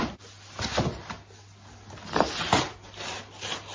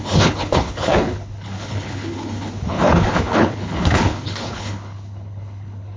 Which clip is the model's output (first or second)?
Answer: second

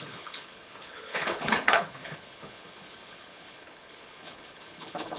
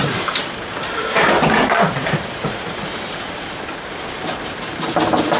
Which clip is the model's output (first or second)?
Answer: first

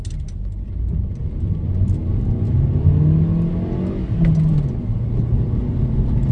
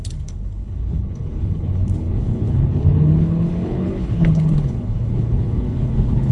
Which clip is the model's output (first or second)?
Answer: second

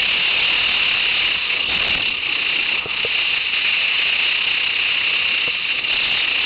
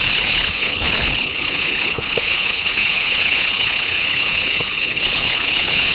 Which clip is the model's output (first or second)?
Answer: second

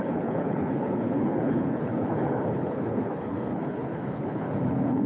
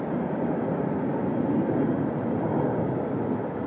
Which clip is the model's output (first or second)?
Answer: first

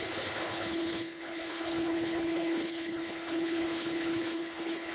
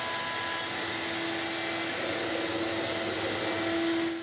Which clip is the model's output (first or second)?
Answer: first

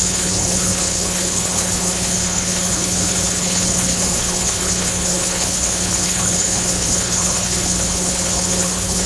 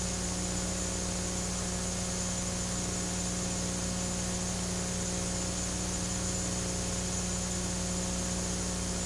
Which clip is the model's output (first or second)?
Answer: first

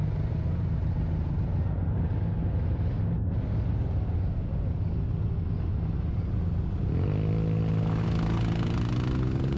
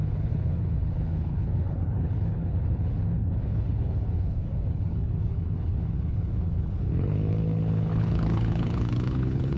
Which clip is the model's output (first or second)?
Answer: second